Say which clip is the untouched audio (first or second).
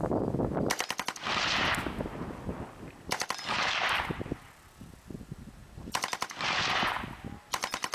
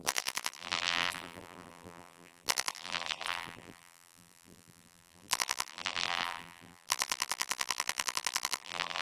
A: first